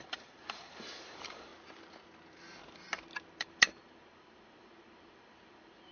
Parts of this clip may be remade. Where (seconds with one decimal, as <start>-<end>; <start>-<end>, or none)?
0.0-1.5; 3.3-5.9